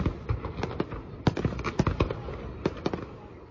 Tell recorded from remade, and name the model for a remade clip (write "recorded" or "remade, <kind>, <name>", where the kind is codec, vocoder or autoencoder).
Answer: recorded